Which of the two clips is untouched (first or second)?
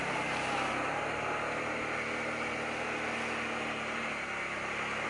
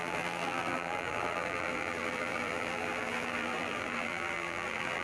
first